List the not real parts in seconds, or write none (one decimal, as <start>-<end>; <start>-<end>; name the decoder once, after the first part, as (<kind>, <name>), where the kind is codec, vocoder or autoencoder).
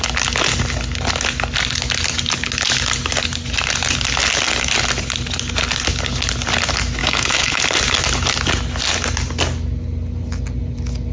7.0-7.6 (autoencoder, DAC-VAE)